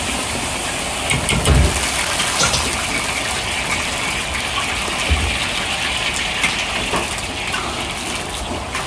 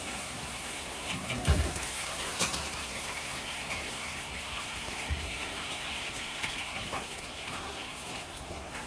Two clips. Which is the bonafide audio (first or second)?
first